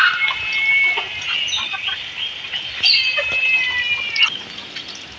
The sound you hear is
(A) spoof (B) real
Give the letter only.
B